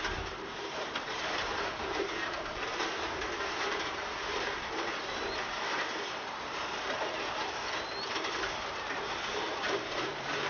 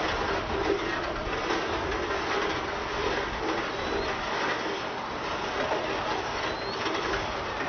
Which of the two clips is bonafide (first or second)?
second